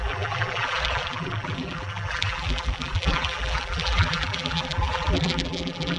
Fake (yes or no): yes